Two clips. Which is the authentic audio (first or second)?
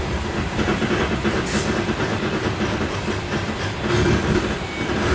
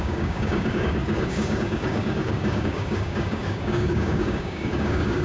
first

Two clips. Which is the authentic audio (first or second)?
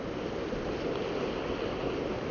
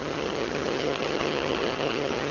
first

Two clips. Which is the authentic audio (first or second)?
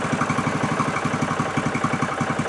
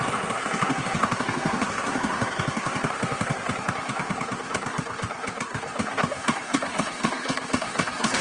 first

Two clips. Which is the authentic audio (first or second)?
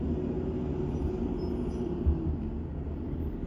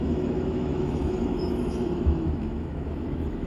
first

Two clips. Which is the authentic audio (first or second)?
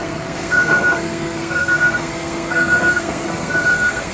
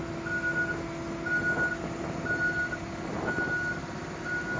second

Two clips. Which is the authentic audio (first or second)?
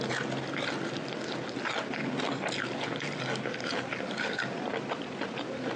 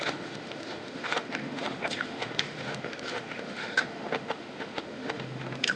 first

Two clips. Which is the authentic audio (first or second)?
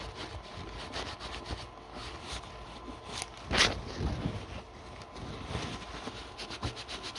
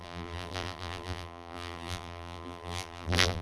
first